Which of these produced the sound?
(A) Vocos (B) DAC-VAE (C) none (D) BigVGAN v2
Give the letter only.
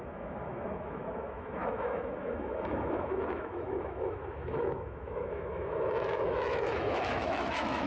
B